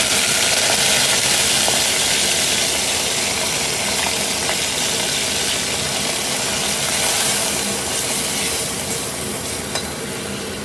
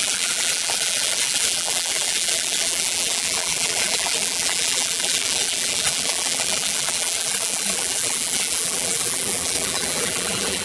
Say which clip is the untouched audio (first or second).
first